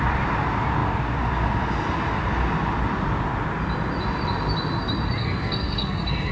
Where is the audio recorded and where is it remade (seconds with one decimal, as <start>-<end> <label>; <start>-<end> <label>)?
0.0-5.2 recorded; 5.2-6.3 remade